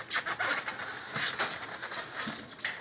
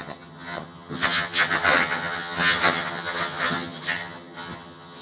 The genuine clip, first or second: first